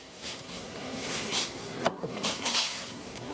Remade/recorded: remade